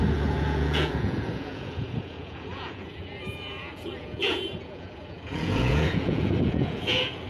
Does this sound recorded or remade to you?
remade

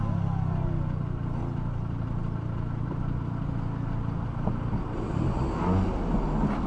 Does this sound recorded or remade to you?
recorded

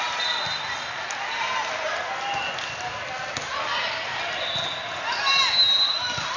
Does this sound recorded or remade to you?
recorded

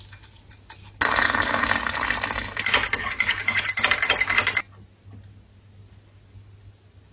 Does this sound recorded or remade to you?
recorded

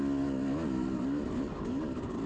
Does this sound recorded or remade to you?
recorded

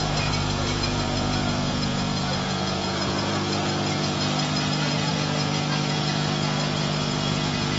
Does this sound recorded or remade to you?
remade